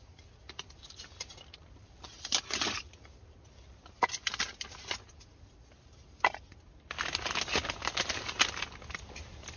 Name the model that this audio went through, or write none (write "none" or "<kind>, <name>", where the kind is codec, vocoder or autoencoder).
none